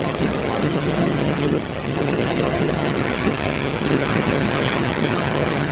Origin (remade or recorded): remade